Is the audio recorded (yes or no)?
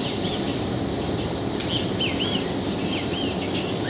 yes